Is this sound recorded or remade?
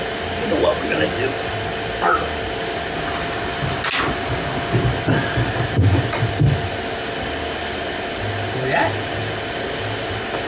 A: recorded